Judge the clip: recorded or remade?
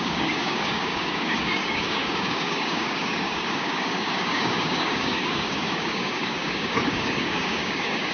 remade